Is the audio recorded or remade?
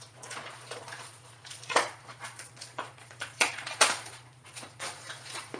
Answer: remade